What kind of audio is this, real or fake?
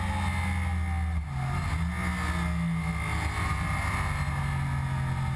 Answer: real